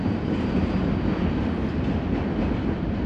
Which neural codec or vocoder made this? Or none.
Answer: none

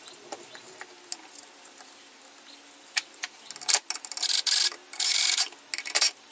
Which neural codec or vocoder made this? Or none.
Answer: none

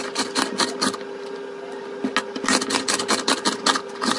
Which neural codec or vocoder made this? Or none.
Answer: none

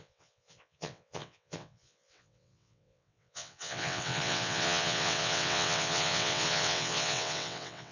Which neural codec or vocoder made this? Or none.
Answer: vocoder, WaveNeXt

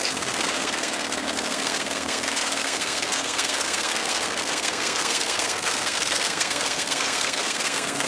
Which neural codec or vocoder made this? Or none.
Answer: codec, SNAC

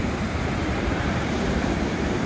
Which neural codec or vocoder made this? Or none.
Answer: vocoder, BigVGAN v2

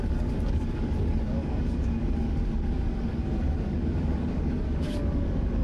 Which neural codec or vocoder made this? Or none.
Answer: codec, DAC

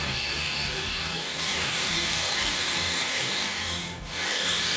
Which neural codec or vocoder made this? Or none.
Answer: codec, DAC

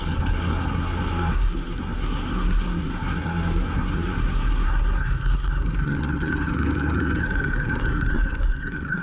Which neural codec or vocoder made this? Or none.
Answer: codec, SNAC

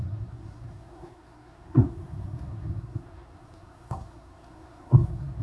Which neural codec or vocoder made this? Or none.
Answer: codec, SNAC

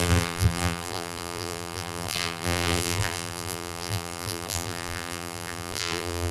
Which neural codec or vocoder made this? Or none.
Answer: vocoder, BigVGAN v2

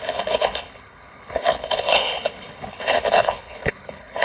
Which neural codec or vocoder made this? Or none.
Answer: codec, HILCodec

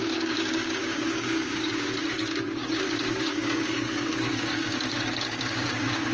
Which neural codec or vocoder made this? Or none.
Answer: codec, DAC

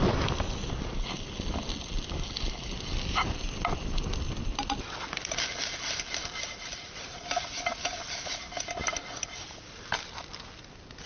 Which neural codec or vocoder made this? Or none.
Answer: none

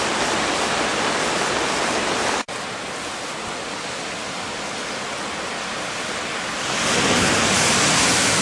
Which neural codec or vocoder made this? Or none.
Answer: none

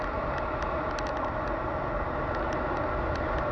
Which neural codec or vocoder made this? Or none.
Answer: none